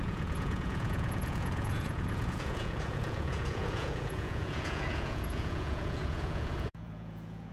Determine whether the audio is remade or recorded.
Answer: remade